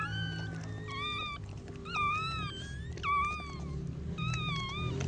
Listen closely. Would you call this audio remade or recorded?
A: recorded